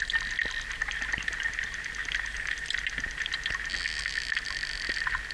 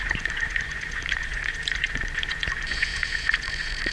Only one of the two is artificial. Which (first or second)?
second